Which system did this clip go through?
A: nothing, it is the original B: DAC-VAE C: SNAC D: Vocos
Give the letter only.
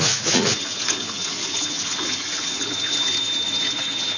D